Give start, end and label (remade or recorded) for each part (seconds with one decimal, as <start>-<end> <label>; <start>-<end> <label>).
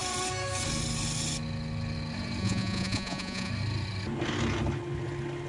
0.0-2.4 recorded; 2.4-3.5 remade; 3.5-5.5 recorded